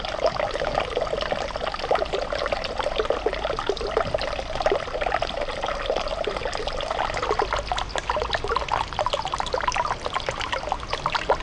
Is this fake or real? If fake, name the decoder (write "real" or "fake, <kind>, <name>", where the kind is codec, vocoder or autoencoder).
real